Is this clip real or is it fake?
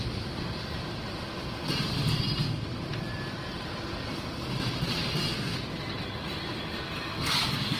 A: real